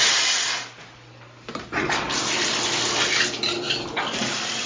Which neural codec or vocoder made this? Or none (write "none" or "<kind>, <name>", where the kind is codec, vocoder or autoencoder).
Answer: none